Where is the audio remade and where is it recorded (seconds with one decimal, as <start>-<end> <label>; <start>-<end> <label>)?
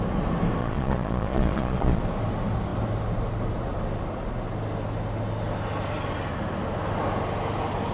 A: 0.0-0.6 recorded; 0.6-2.0 remade; 2.0-7.9 recorded